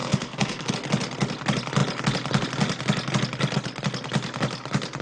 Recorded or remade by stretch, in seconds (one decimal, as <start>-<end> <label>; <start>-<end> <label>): 0.0-0.7 remade; 0.7-5.0 recorded